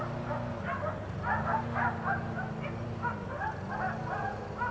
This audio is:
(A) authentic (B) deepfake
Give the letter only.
A